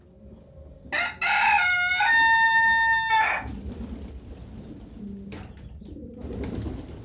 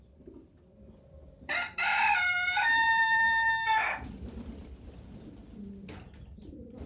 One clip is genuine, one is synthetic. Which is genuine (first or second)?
first